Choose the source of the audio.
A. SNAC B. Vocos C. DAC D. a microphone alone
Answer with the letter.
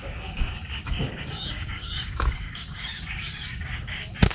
C